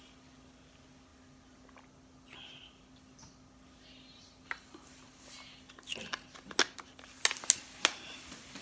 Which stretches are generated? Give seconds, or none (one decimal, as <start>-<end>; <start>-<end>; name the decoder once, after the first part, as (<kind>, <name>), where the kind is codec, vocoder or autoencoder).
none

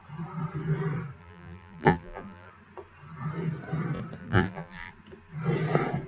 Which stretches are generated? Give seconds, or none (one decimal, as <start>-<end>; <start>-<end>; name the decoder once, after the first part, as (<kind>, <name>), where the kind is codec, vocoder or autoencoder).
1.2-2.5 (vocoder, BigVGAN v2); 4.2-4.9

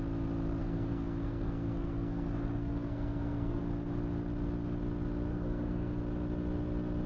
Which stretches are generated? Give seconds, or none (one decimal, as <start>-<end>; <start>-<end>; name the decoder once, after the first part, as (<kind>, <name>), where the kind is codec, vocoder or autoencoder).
0.6-3.6 (codec, SNAC); 5.3-6.0